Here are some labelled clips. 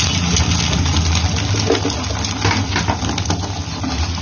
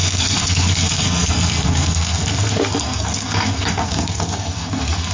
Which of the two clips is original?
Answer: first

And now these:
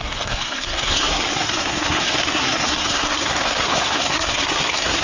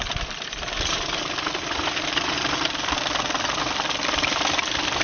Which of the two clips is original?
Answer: second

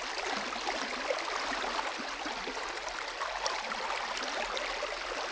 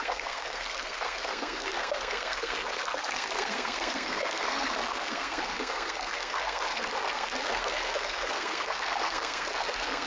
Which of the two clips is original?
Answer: first